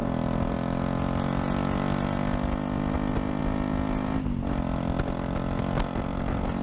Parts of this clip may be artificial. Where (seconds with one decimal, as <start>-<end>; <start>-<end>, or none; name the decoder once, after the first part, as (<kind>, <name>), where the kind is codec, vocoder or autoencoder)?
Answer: none